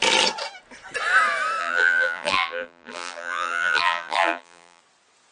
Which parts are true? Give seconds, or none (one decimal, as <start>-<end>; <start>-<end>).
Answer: 0.0-1.6; 4.8-5.3